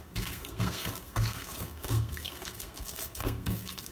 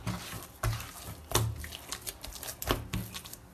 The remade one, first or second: first